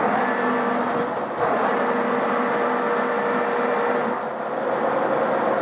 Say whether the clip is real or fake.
real